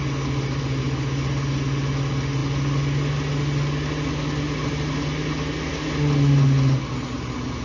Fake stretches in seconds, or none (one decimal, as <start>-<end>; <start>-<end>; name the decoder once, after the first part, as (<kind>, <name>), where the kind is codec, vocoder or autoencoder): none